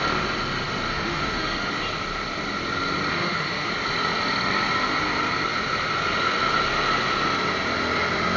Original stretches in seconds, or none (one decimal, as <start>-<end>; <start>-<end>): 0.0-0.9; 1.7-3.1; 3.7-8.4